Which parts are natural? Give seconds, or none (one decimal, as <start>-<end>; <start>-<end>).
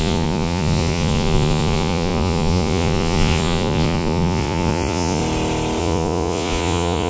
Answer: 5.2-5.8